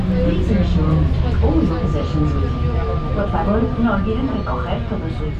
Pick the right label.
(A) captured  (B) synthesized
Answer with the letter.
A